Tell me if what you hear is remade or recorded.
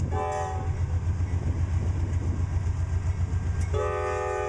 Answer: recorded